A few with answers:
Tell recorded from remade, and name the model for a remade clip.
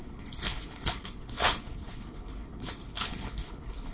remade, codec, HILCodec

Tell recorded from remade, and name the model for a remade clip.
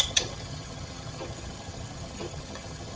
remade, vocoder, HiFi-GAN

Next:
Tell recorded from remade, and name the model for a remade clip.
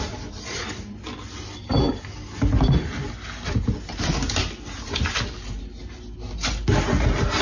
recorded